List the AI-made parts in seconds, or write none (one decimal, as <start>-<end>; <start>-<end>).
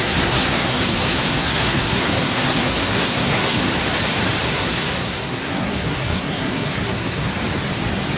0.0-3.7; 4.4-7.3